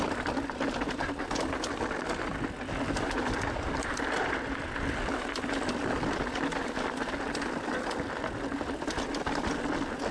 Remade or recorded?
recorded